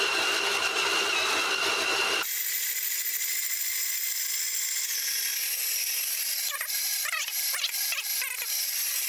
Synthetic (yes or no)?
no